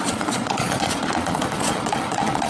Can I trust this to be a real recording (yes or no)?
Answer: no